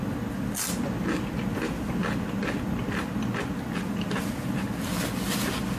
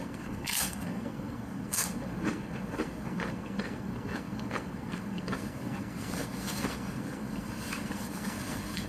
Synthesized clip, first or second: second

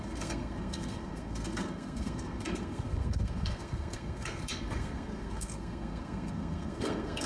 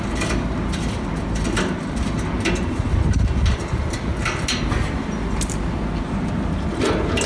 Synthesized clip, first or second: first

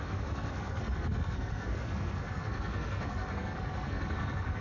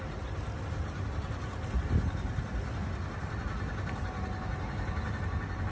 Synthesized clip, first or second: first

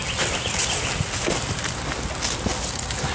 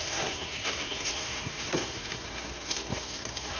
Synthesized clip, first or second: second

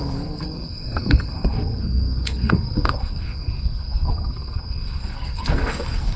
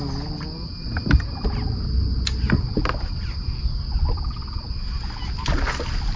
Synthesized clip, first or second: first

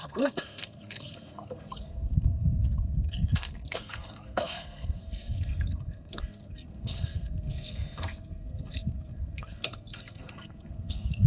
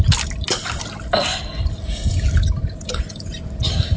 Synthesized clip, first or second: first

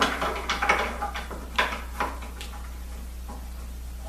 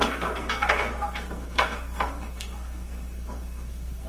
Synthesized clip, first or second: second